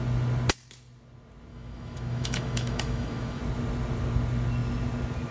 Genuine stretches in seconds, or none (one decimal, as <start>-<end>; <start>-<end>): 0.0-1.5; 3.4-5.3